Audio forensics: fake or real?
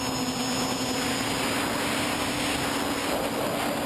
real